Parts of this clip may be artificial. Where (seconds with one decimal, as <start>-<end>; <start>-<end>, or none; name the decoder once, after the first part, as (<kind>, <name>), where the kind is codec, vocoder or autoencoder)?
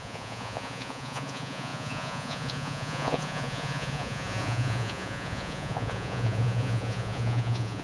0.0-7.8 (vocoder, Vocos)